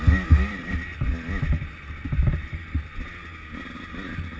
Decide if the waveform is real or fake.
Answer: real